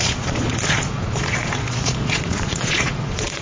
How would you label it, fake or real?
fake